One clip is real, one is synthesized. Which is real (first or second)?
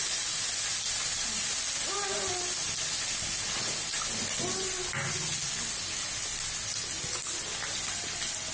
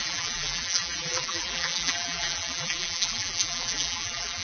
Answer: first